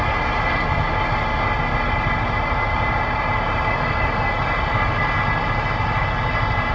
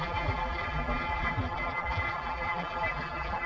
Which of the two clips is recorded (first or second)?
first